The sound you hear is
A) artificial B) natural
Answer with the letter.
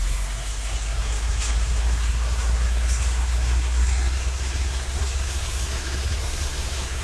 A